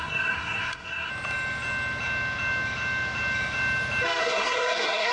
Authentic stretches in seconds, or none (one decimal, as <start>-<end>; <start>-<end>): 1.1-4.2